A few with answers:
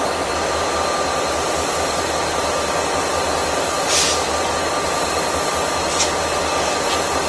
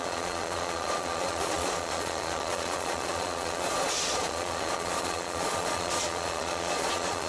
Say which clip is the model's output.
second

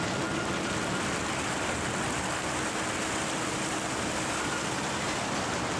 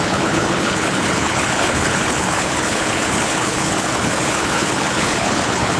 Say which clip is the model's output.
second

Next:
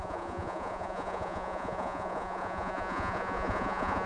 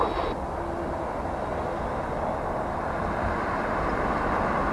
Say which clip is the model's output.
first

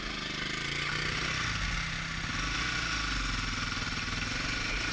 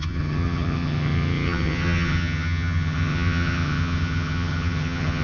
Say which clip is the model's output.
second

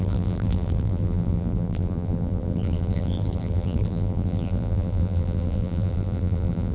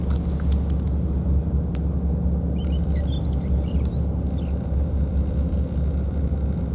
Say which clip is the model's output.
first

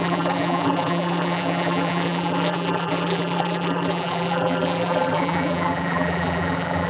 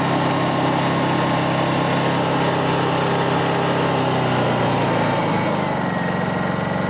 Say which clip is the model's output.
first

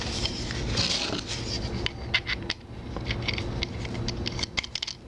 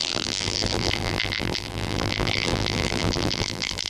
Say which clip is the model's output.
second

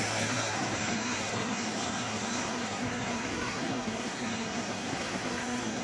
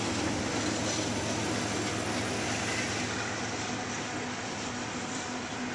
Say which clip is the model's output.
first